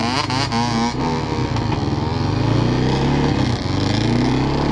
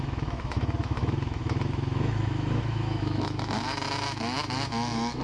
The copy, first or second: second